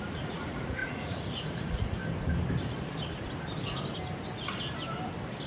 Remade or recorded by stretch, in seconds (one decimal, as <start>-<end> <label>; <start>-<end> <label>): 0.0-2.0 remade; 2.0-5.5 recorded